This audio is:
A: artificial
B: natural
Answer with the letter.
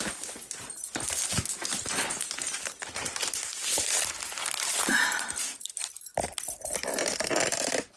B